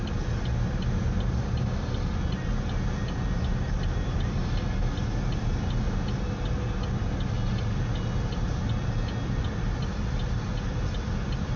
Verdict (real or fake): real